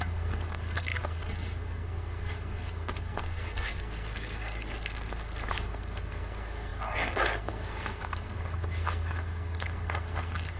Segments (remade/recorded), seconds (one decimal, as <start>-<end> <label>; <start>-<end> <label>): 0.0-10.6 remade